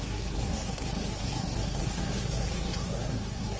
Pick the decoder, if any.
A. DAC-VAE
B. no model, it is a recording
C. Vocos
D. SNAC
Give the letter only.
D